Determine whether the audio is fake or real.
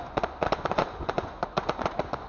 fake